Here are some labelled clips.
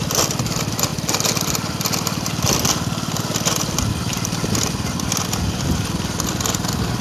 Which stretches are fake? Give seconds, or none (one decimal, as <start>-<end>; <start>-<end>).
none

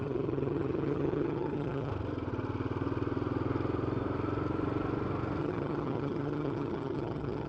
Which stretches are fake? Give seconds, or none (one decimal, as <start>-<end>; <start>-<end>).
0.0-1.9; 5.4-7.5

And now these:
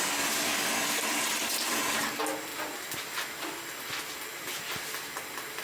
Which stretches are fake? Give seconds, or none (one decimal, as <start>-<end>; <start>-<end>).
none

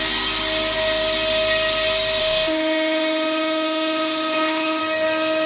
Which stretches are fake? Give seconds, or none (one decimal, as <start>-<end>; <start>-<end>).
2.2-4.8

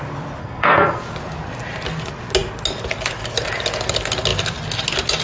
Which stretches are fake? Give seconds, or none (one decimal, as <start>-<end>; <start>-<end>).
0.4-1.0

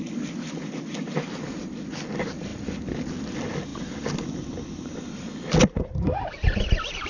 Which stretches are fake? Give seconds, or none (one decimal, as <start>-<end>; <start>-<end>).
none